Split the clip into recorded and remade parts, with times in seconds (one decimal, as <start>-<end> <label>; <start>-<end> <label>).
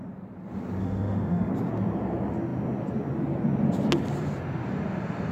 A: 0.0-0.8 recorded; 0.8-1.5 remade; 1.5-5.3 recorded